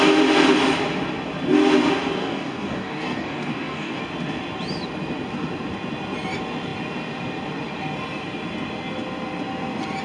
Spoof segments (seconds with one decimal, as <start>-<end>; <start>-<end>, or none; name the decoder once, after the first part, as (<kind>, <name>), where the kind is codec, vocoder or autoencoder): 2.2-4.0 (codec, DAC)